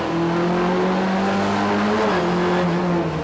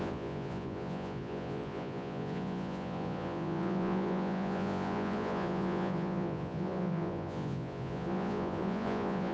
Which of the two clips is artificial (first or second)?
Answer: second